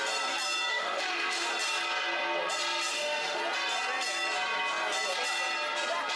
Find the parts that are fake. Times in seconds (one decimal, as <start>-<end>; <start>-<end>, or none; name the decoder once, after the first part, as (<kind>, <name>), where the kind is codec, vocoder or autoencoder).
0.7-1.5 (autoencoder, DAC-VAE); 2.9-3.4